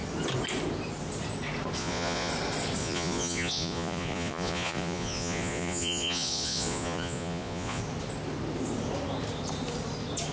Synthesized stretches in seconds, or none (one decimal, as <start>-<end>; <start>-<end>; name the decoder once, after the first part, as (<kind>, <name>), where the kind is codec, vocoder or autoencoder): 1.8-2.3 (vocoder, Vocos); 2.8-7.8